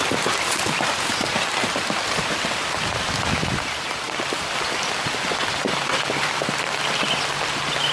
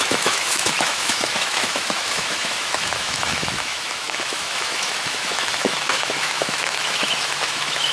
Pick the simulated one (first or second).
second